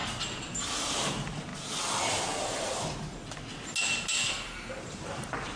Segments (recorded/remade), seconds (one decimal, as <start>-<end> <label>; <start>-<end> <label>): 0.0-0.8 recorded; 0.8-1.5 remade; 1.5-4.7 recorded; 4.7-5.6 remade